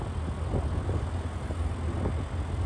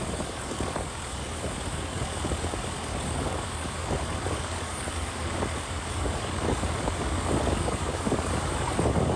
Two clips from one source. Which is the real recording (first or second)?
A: first